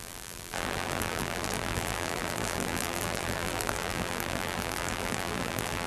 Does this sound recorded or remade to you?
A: remade